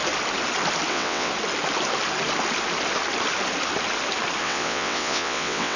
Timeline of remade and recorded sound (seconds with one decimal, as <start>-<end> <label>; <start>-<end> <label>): 0.0-0.9 recorded; 0.9-1.3 remade; 1.3-4.4 recorded; 4.4-5.8 remade